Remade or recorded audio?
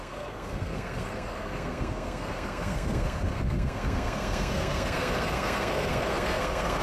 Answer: remade